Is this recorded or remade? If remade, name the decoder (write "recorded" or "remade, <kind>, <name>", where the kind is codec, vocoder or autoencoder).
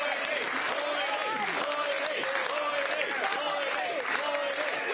recorded